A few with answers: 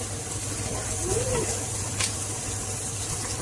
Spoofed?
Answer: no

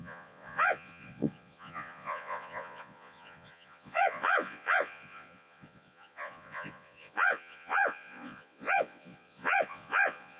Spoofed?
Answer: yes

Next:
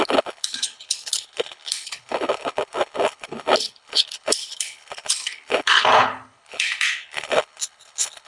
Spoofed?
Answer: yes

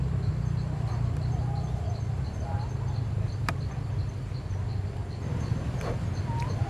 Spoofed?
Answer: no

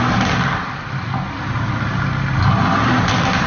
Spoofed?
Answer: no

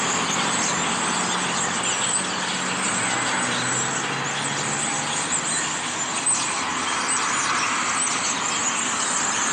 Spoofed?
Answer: no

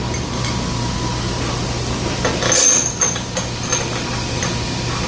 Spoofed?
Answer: no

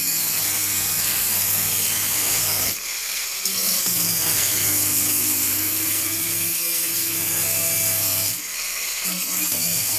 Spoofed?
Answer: yes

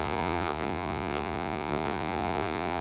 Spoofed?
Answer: yes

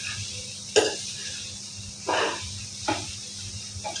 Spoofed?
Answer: no